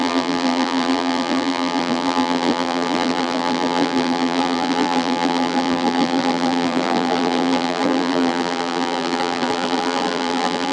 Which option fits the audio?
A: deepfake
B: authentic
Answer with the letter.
A